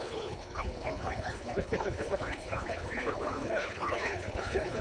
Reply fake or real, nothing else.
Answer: fake